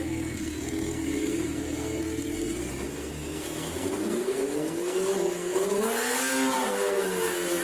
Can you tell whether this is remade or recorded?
remade